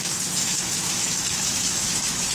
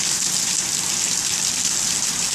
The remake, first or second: first